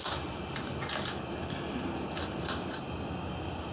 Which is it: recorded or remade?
recorded